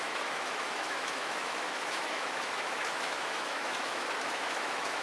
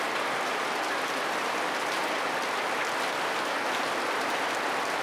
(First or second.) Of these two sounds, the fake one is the first